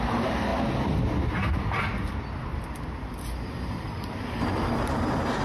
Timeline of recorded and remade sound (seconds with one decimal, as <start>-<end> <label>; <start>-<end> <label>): 0.0-0.5 remade; 0.5-3.7 recorded; 3.7-5.4 remade